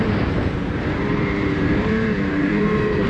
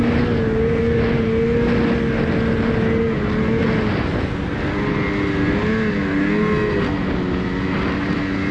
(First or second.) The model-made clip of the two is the first